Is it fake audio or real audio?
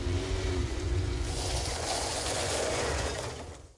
fake